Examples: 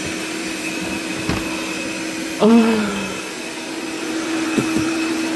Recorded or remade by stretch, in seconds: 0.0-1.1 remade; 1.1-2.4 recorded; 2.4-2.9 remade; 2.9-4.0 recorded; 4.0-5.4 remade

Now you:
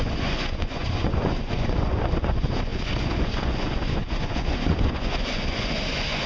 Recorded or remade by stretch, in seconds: 0.0-6.3 remade

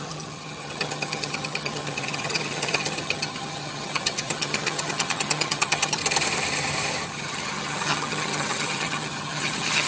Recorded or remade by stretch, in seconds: 0.0-6.0 remade; 6.0-7.1 recorded; 7.1-9.9 remade

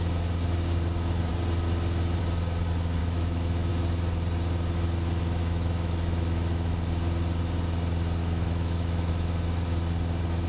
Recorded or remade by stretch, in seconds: 0.0-3.0 recorded; 3.0-3.7 remade; 3.7-5.4 recorded; 5.4-6.7 remade; 6.7-8.2 recorded; 8.2-9.1 remade; 9.1-10.5 recorded

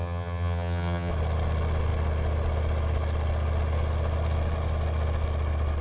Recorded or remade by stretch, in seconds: 0.0-1.1 remade; 1.1-5.8 recorded

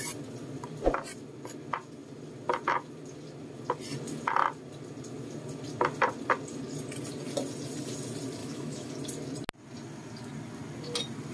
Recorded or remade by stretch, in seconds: 0.0-8.4 recorded; 8.4-8.9 remade; 8.9-11.3 recorded